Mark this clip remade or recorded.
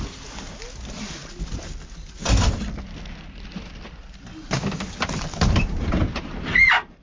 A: recorded